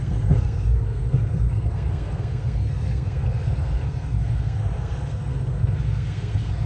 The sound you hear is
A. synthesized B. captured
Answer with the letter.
A